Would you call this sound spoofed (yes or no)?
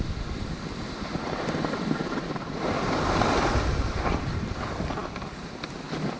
yes